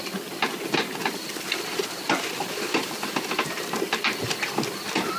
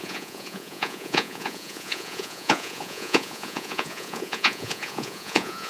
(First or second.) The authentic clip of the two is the first